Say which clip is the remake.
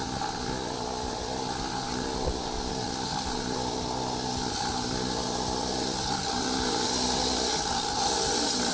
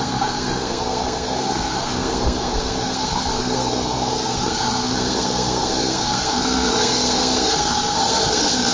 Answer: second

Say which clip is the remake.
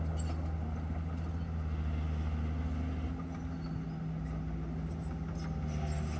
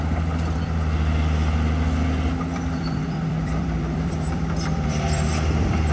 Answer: second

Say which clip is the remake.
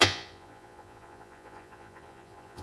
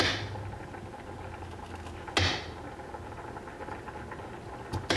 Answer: first